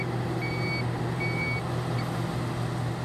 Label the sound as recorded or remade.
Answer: recorded